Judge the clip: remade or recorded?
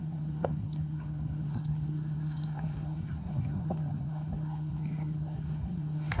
remade